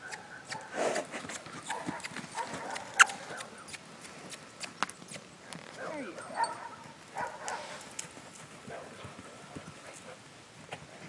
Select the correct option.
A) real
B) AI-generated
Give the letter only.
A